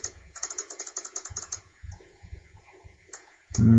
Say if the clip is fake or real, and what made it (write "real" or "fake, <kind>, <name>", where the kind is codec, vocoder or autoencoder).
fake, vocoder, Vocos